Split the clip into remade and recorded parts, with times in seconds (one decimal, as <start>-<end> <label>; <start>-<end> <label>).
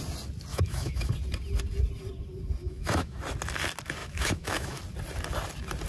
0.0-0.5 recorded; 0.5-1.1 remade; 1.1-2.6 recorded; 2.6-3.2 remade; 3.2-4.0 recorded; 4.0-4.8 remade; 4.8-5.9 recorded